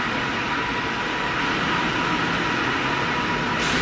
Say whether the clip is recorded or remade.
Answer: recorded